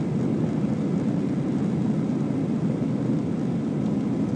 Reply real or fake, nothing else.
real